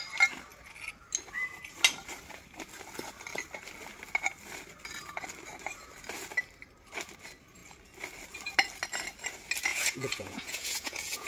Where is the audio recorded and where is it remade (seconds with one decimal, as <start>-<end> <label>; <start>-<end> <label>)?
0.0-9.7 recorded; 9.7-11.3 remade